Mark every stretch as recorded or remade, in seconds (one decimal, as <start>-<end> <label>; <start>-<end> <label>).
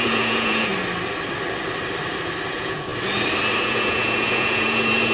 0.0-0.7 remade; 0.7-2.5 recorded; 2.5-2.9 remade; 2.9-3.6 recorded; 3.6-5.1 remade